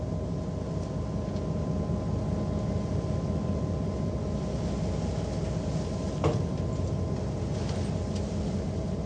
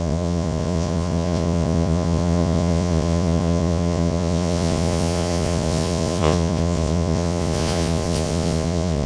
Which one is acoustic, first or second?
first